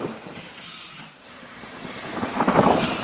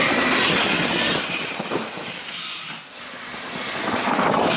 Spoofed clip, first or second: first